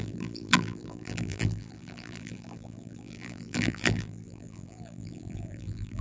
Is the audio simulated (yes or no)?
yes